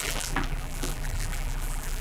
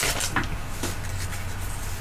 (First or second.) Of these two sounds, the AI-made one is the first